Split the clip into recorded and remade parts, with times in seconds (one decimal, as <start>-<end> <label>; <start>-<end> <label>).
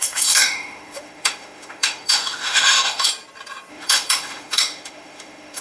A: 0.0-3.1 remade; 3.1-3.7 recorded; 3.7-5.6 remade